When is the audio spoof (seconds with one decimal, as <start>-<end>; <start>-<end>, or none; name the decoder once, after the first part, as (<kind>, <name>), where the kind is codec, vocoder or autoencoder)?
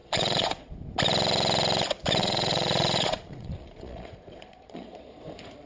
0.0-0.7 (vocoder, Vocos); 2.2-5.2